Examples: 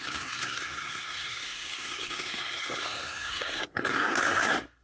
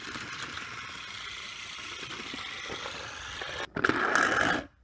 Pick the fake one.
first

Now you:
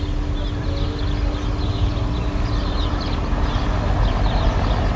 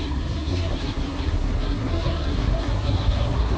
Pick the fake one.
second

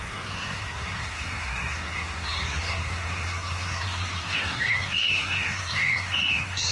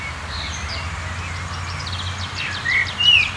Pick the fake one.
first